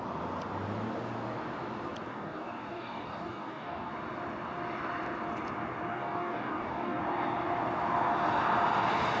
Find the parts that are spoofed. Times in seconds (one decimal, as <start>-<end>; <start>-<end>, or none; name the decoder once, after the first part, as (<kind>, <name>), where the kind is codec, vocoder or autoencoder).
2.1-3.9 (codec, DAC); 5.9-7.0